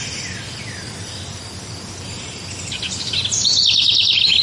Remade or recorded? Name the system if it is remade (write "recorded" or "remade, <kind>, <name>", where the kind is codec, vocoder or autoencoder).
recorded